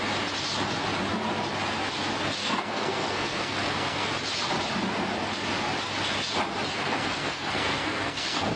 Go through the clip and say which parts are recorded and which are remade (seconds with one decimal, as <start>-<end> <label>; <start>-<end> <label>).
0.0-2.4 recorded; 2.4-4.1 remade; 4.1-6.7 recorded; 6.7-8.6 remade